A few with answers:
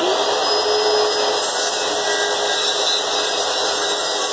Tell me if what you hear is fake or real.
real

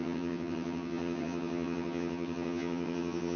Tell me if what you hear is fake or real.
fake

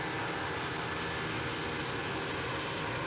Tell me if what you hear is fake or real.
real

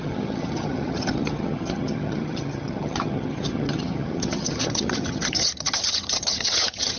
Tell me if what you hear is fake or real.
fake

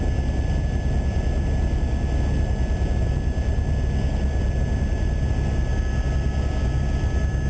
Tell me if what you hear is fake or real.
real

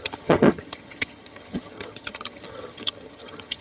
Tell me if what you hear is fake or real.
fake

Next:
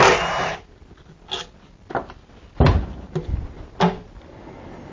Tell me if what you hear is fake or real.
real